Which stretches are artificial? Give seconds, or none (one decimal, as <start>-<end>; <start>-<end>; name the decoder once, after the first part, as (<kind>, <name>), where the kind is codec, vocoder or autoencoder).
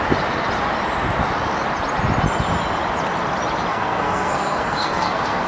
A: 3.7-5.5 (codec, SNAC)